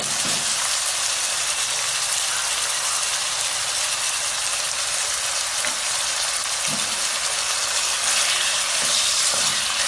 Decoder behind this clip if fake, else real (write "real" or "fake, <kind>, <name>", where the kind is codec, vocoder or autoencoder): real